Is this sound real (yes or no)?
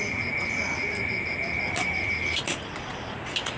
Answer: yes